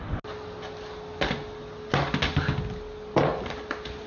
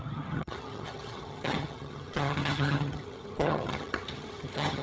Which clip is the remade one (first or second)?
second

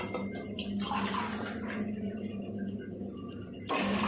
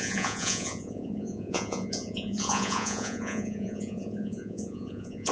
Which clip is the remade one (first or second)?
second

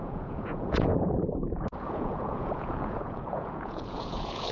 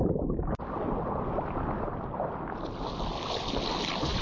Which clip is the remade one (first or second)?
first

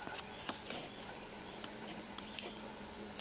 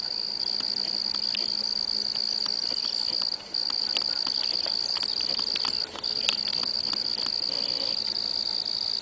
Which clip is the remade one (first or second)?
first